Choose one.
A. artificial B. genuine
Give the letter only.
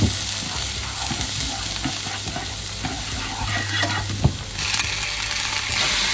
B